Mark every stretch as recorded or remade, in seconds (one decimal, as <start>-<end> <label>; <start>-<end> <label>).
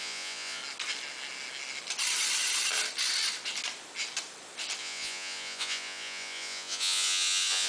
0.0-0.6 remade; 0.6-4.8 recorded; 4.8-7.7 remade